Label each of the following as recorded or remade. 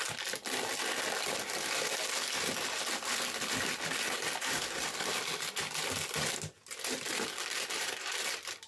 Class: recorded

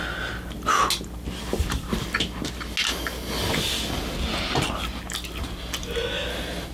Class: recorded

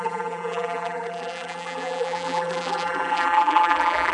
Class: remade